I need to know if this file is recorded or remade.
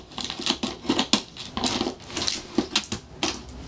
recorded